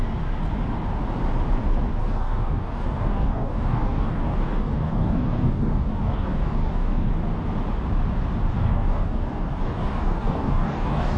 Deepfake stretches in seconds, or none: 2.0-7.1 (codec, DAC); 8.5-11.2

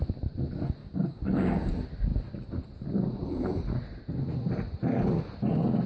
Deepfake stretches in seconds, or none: 0.8-1.7 (codec, DAC)

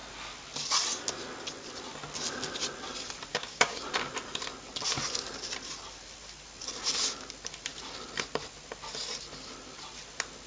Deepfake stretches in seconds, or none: 3.3-3.8 (codec, DAC)

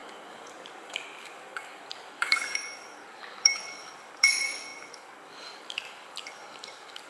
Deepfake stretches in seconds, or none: 0.0-7.1 (codec, DAC)